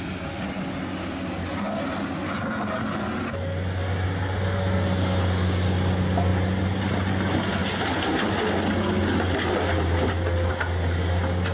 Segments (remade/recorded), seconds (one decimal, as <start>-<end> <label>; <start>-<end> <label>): 0.0-11.5 recorded